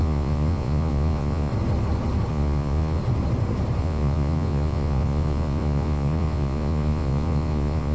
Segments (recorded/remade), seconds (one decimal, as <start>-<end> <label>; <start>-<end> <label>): 0.0-1.5 remade; 1.5-2.3 recorded; 2.3-3.0 remade; 3.0-3.8 recorded; 3.8-7.9 remade